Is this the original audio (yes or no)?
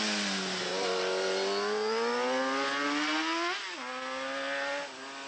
yes